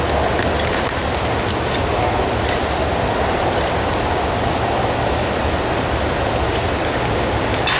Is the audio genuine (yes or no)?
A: yes